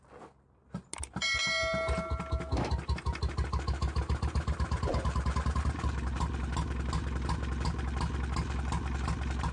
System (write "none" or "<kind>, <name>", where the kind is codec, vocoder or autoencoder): none